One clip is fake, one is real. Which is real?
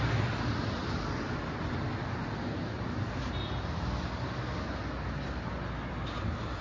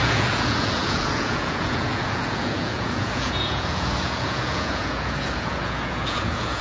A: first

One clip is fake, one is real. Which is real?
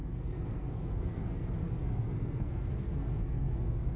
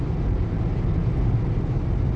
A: second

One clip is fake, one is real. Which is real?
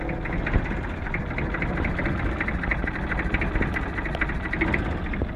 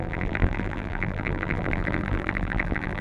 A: first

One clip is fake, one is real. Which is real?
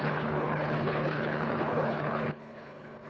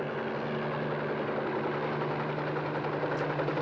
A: second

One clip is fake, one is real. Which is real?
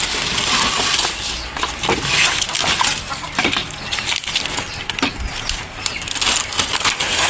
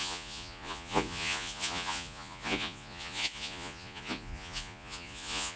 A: first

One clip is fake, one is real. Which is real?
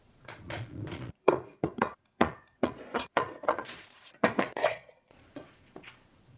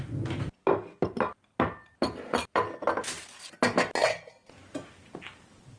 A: second